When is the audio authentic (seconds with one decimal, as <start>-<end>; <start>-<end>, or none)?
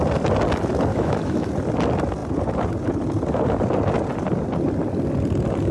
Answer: 0.0-0.9; 1.5-5.7